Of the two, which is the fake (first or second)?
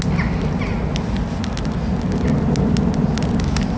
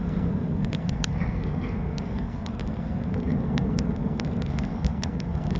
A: second